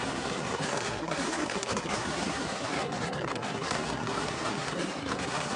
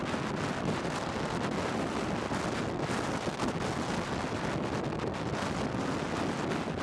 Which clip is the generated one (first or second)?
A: first